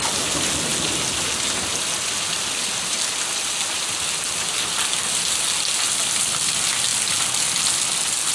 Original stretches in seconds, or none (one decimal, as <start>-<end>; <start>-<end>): 0.0-8.3